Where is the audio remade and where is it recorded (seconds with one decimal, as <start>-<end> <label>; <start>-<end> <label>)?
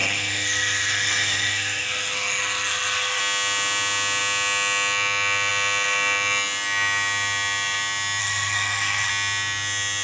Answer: 0.0-3.2 remade; 3.2-8.2 recorded; 8.2-9.1 remade; 9.1-10.0 recorded